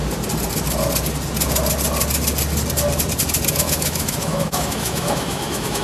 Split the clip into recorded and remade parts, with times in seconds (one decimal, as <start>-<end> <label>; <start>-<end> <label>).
0.0-3.5 recorded; 3.5-5.8 remade